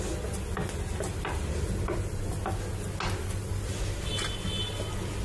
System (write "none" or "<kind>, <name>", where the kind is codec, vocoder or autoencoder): none